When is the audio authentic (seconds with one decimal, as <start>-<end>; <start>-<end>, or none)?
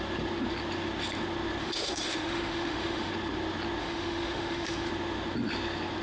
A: 0.0-1.6; 3.1-3.8; 4.9-6.0